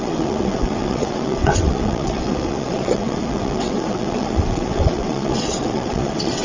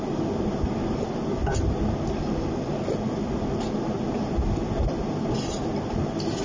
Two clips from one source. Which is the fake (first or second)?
first